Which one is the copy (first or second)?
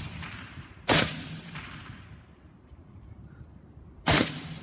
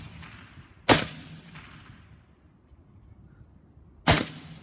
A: first